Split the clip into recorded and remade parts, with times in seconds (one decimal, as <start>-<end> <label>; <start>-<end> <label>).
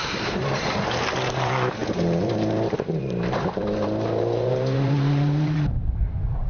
0.0-6.5 remade